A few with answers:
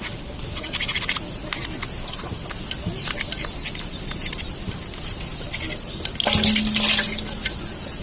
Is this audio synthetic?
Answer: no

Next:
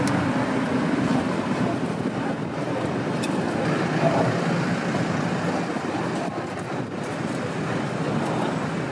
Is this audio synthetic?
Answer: no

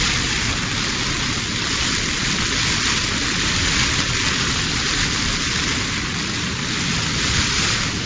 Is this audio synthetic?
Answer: no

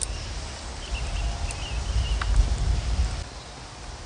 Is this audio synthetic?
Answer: no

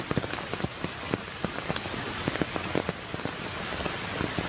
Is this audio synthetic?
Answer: no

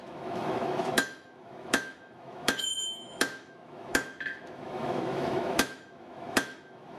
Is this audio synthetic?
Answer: yes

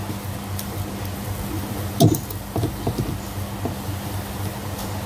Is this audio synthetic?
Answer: no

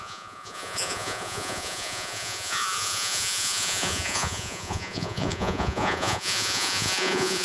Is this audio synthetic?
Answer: yes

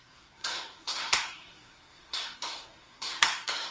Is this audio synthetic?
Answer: yes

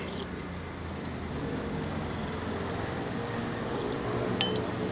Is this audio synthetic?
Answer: no